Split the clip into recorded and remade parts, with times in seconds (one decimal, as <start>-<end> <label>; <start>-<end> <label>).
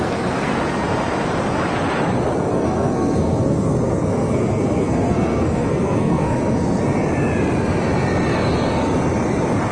0.0-0.5 remade; 0.5-2.5 recorded; 2.5-6.8 remade; 6.8-9.7 recorded